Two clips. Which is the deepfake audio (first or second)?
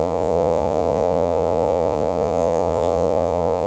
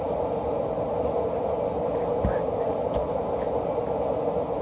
first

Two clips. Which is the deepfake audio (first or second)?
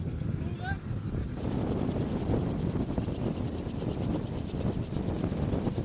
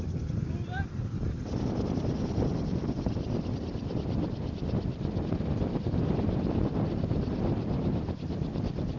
second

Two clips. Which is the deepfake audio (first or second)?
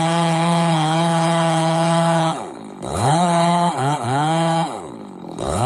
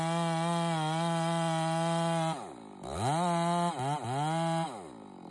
first